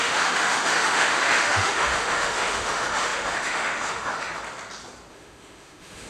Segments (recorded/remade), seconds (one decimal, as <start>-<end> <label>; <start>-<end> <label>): 0.0-4.3 remade; 4.3-5.1 recorded; 5.1-6.1 remade